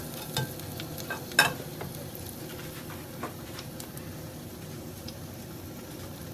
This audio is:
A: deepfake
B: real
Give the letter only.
B